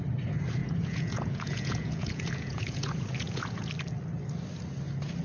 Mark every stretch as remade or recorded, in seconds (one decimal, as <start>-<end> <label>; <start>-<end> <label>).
0.0-0.6 recorded; 0.6-3.7 remade; 3.7-5.2 recorded